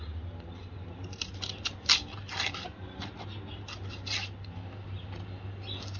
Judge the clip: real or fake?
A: real